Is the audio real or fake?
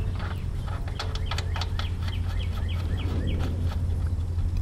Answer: real